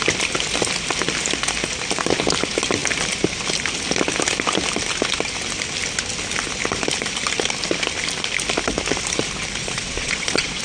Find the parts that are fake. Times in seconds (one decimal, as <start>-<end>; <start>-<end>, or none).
9.6-10.6